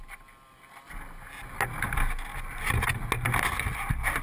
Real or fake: real